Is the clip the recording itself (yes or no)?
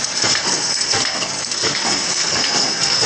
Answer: no